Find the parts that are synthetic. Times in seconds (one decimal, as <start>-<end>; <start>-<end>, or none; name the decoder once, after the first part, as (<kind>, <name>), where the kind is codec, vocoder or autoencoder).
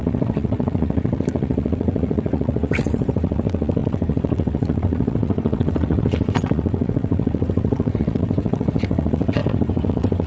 0.0-10.3 (vocoder, WaveNeXt)